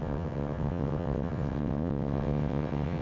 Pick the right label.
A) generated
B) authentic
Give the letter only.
A